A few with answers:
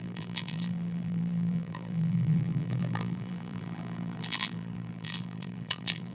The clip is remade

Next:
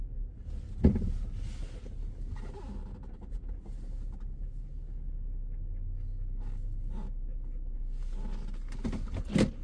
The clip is recorded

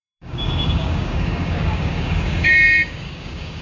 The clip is remade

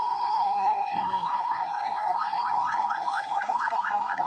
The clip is remade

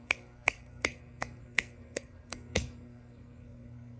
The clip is remade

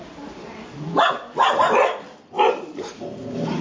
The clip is recorded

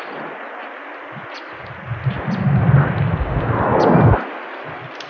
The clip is recorded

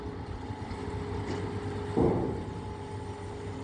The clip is recorded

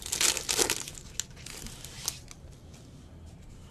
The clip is recorded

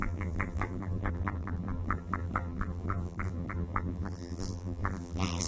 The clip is remade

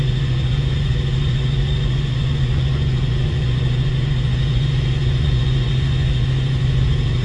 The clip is remade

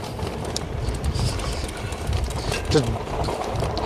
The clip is recorded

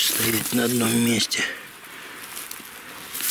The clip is recorded